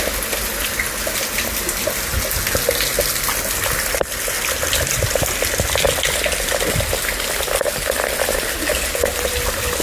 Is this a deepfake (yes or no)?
no